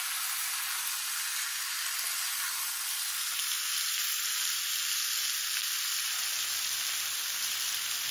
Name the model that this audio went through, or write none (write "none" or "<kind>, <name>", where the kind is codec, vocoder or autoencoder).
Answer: none